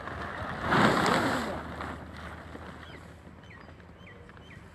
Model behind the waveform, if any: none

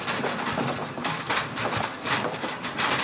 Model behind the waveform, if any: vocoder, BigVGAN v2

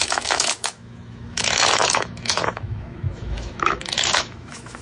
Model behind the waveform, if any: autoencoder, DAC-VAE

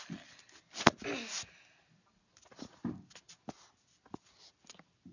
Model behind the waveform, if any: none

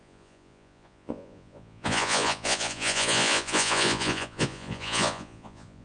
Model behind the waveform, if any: vocoder, Vocos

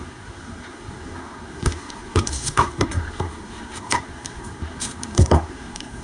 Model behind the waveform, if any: codec, SNAC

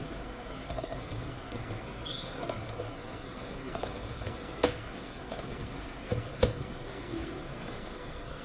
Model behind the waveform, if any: codec, SNAC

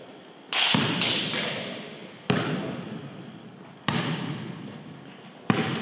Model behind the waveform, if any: none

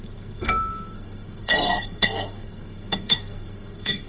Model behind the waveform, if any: codec, SNAC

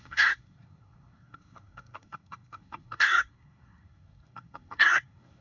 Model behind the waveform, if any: codec, SNAC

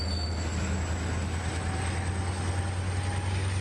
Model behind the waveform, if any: none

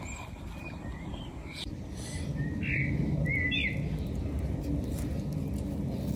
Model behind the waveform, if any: none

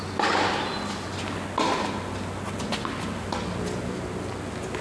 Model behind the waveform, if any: none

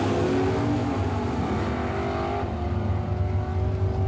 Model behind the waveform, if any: none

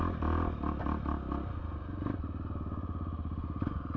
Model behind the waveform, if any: none